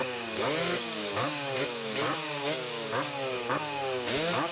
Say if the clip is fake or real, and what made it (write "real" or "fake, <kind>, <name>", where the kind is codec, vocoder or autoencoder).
fake, codec, DAC